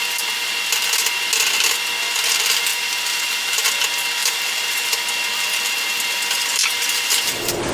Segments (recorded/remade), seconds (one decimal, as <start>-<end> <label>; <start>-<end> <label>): 0.0-2.7 recorded; 2.7-3.6 remade; 3.6-4.2 recorded; 4.2-5.0 remade; 5.0-6.5 recorded; 6.5-7.3 remade; 7.3-7.7 recorded